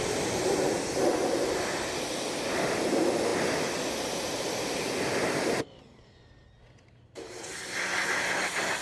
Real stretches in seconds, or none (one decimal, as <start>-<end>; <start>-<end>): 0.0-8.8